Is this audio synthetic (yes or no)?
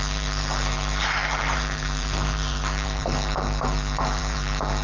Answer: yes